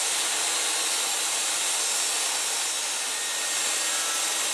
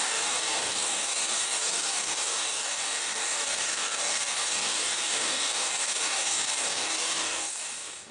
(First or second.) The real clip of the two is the first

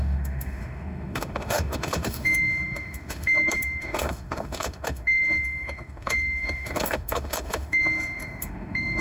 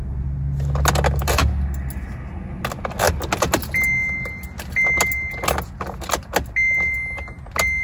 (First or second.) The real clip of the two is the second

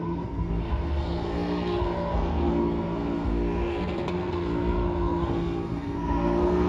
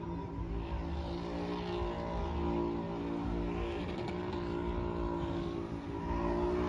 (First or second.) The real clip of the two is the second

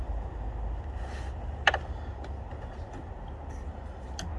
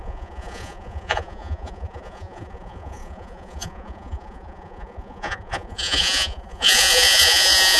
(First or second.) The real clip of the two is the first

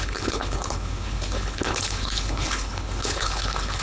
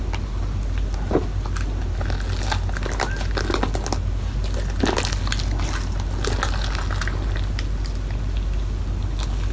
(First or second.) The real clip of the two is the second